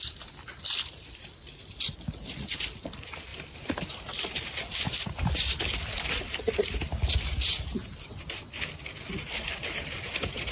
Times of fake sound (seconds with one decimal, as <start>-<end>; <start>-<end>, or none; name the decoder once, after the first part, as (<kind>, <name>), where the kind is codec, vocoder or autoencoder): 3.3-5.6 (vocoder, BigVGAN v2)